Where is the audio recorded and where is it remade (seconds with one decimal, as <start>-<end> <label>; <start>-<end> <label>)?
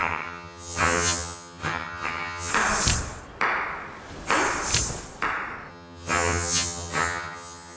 0.0-2.5 remade; 2.5-5.7 recorded; 5.7-7.8 remade